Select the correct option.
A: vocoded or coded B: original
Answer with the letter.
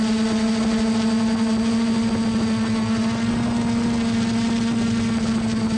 B